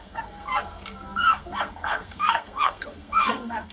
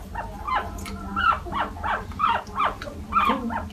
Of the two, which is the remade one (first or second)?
first